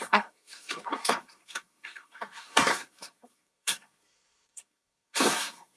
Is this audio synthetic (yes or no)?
yes